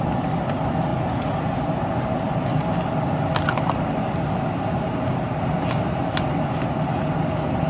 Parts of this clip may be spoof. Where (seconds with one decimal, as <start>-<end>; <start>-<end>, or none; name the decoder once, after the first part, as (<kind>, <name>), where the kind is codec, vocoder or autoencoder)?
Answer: none

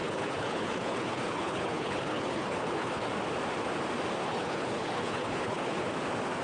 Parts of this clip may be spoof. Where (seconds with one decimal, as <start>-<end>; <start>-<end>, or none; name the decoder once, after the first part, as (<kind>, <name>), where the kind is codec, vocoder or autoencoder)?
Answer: 0.0-3.1 (codec, HILCodec); 4.2-5.9

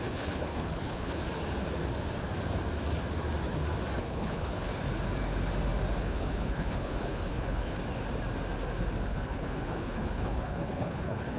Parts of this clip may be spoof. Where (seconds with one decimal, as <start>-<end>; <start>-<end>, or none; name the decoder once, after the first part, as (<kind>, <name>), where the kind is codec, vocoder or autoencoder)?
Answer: 0.0-1.2 (codec, HILCodec); 4.0-4.7; 6.0-7.8; 9.1-11.4

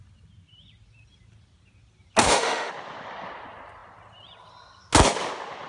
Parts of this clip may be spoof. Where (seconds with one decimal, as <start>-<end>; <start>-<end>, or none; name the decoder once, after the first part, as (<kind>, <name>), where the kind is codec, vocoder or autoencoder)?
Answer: 2.2-2.7 (autoencoder, DAC-VAE)